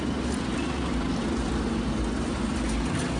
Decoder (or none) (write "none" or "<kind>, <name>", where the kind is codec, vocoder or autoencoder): none